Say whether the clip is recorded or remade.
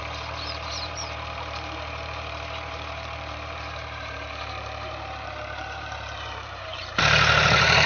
remade